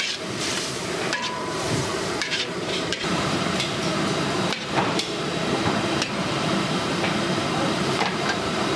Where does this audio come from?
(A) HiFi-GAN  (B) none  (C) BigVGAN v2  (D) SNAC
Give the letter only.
C